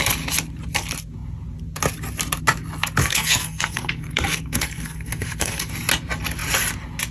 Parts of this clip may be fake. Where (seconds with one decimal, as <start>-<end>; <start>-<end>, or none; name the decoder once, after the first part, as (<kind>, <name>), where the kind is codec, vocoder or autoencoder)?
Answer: 3.0-5.7 (codec, SNAC)